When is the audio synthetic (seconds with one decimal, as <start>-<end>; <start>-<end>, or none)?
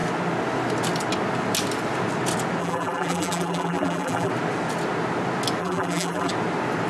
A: 2.6-4.3; 5.6-6.3